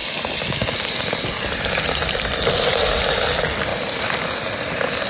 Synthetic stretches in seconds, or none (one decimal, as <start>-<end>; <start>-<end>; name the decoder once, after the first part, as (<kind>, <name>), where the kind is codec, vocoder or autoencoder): none